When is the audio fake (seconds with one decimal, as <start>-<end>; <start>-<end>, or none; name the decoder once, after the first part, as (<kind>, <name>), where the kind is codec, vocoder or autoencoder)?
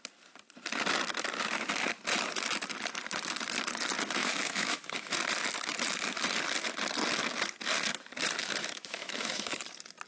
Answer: 4.2-5.1 (autoencoder, DAC-VAE); 8.4-9.6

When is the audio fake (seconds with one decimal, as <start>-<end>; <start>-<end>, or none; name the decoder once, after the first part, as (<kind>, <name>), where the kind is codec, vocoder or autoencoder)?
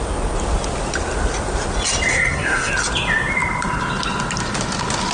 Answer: 2.1-2.7 (codec, SNAC)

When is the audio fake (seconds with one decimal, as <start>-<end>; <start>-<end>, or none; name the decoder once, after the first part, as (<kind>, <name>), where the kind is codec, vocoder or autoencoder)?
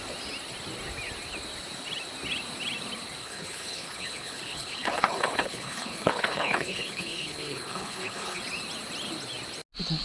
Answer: 3.2-8.4 (codec, HILCodec)